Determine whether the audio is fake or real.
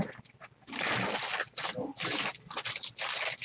real